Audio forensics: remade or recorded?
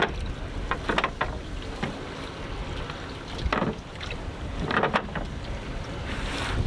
recorded